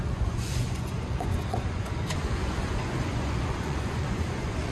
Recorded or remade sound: remade